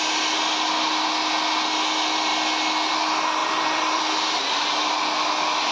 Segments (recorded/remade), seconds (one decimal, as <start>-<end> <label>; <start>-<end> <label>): 0.0-3.4 recorded; 3.4-4.0 remade; 4.0-5.7 recorded